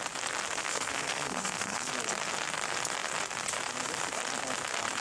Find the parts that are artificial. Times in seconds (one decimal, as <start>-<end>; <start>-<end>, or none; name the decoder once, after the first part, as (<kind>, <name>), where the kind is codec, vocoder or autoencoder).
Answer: 0.6-1.9 (codec, SNAC)